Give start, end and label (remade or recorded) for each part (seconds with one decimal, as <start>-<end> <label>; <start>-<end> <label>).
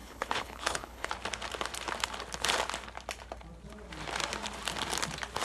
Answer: 0.0-1.1 remade; 1.1-5.4 recorded